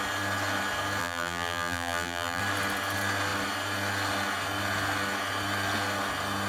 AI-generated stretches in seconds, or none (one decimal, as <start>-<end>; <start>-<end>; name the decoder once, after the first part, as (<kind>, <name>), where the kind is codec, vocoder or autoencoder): 1.0-2.4 (vocoder, BigVGAN v2)